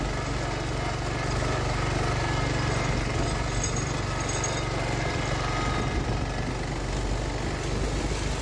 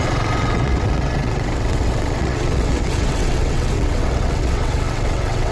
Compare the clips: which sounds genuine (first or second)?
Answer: first